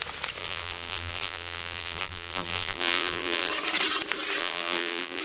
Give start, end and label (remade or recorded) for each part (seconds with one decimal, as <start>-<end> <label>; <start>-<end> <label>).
0.0-0.4 recorded; 0.4-3.5 remade; 3.5-4.4 recorded; 4.4-5.2 remade